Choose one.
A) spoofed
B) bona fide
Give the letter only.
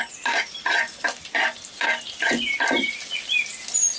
B